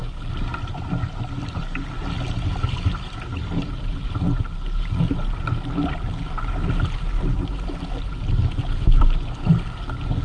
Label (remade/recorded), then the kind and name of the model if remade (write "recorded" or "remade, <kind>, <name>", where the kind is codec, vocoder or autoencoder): recorded